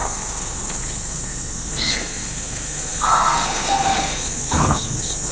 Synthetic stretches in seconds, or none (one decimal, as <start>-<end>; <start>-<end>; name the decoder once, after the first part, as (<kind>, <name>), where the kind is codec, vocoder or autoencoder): 0.0-5.3 (codec, SNAC)